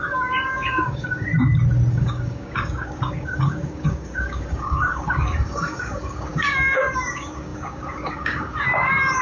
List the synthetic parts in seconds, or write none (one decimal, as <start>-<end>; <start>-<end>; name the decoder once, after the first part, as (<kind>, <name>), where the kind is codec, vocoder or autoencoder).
0.0-1.3 (codec, DAC); 1.9-9.2